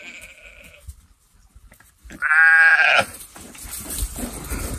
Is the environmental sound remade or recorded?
recorded